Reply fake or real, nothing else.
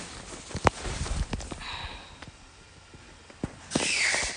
fake